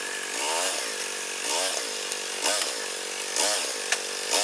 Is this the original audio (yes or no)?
yes